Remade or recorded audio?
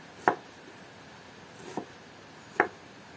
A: recorded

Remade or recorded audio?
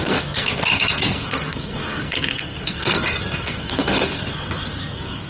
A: remade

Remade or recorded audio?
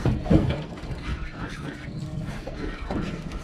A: remade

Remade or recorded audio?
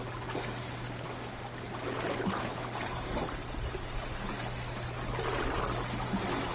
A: recorded